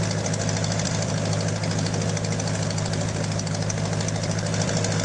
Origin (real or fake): real